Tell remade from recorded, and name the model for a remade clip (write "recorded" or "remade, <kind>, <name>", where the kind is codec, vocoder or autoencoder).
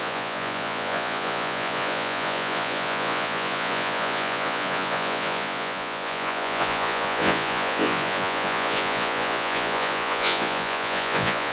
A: remade, vocoder, Vocos